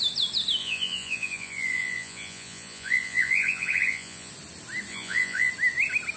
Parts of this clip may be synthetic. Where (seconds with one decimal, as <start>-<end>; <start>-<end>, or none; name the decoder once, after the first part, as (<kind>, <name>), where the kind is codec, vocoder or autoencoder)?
0.6-4.3 (vocoder, Vocos); 4.9-5.5

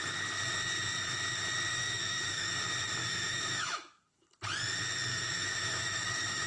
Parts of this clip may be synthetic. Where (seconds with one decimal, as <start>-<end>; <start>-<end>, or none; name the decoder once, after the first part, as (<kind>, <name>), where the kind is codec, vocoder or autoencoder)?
1.7-2.5 (autoencoder, DAC-VAE); 3.0-4.4; 5.1-6.5

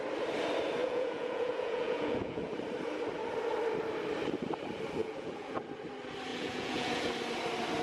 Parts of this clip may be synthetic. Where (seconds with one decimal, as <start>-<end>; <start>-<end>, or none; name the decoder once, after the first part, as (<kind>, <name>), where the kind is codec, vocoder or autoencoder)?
0.8-2.4 (vocoder, Vocos); 5.0-5.6; 6.3-7.1